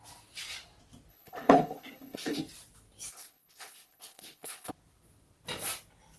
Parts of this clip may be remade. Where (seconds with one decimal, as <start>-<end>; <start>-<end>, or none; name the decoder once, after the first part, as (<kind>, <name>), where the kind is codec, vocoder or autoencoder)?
1.1-2.4 (codec, HILCodec); 3.1-4.7